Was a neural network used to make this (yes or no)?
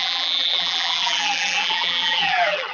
yes